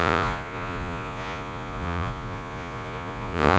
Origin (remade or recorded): remade